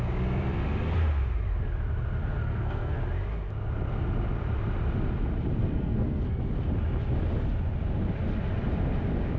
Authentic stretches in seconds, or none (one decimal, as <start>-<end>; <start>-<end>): 0.0-2.2; 3.0-5.6; 6.5-9.4